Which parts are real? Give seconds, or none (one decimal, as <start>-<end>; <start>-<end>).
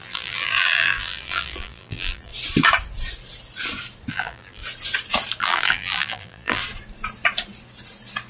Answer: 2.3-4.1; 4.6-5.4; 6.6-8.3